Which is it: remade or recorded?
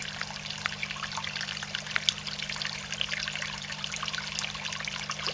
recorded